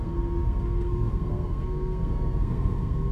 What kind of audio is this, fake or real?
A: fake